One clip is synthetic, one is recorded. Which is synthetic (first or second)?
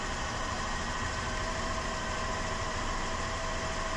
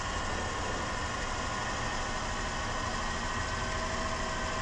first